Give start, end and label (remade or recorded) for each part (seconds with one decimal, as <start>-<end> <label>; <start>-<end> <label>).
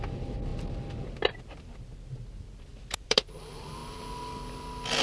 0.0-2.7 recorded; 2.7-3.4 remade; 3.4-3.8 recorded; 3.8-4.3 remade; 4.3-5.0 recorded